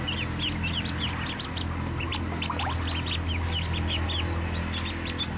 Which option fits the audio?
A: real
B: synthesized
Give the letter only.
A